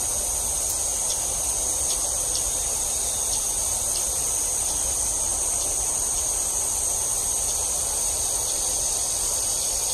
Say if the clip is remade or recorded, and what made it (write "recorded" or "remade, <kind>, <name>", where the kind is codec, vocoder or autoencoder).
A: recorded